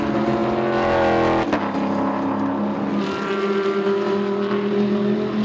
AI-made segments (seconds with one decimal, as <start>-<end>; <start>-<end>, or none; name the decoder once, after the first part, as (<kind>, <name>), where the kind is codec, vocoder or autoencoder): none

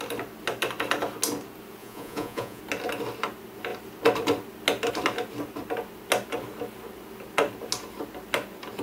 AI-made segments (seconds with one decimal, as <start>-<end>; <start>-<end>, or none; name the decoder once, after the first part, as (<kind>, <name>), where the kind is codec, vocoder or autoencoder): 1.8-2.6 (vocoder, Vocos)

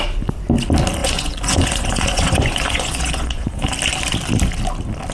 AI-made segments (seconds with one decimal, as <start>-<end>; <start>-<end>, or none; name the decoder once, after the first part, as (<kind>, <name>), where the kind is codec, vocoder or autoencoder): 1.0-3.7 (vocoder, Vocos)

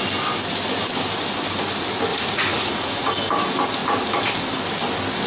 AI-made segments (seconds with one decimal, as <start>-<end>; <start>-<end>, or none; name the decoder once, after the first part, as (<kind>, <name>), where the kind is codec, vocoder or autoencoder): 2.1-3.1 (vocoder, Vocos)